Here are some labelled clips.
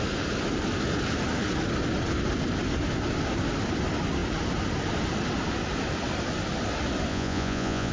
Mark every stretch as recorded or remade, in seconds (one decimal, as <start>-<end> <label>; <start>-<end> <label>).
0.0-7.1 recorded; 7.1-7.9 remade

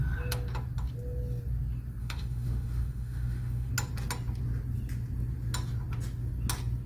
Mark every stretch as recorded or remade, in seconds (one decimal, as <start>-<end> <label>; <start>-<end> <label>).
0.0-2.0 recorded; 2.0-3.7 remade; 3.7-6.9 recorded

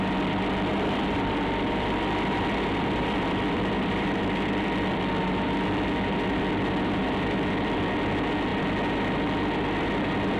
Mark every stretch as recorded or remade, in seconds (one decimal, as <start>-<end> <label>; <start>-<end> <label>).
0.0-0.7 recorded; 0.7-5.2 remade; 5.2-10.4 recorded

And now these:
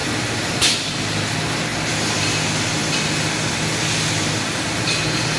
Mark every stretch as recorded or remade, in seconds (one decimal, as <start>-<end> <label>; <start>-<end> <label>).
0.0-1.0 remade; 1.0-5.4 recorded

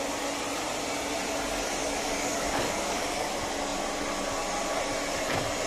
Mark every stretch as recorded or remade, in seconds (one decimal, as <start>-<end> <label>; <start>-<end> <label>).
0.0-1.8 recorded; 1.8-3.3 remade; 3.3-5.7 recorded